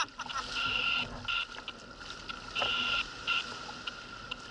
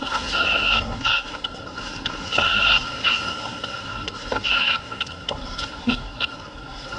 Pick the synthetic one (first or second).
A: second